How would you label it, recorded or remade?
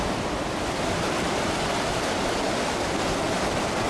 recorded